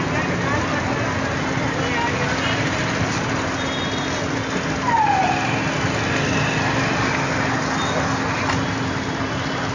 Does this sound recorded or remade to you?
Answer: recorded